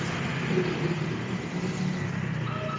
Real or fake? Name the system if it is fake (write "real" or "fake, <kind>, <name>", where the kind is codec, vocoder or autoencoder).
real